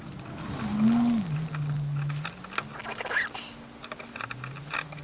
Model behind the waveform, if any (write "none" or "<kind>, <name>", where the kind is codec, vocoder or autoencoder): none